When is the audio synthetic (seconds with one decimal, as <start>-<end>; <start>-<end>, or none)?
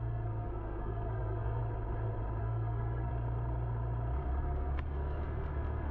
0.0-1.6; 2.4-3.1; 4.4-5.9